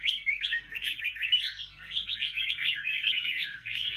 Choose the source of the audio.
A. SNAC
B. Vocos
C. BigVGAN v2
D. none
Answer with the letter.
A